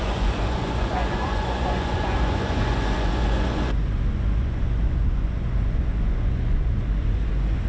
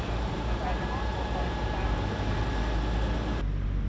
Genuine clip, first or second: second